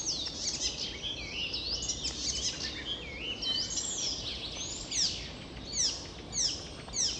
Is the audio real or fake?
real